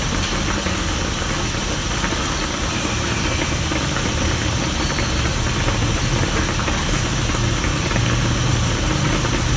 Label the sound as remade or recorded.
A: recorded